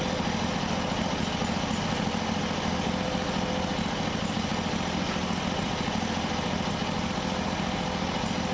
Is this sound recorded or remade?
recorded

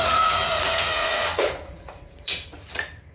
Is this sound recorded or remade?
remade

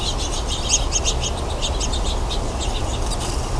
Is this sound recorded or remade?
recorded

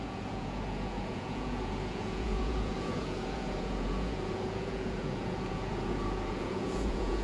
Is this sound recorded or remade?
remade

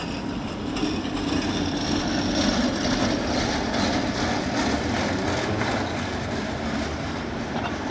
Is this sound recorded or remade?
recorded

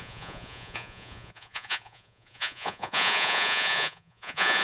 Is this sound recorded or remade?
remade